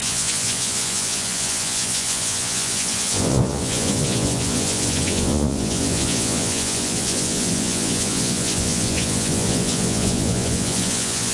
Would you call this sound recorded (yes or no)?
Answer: no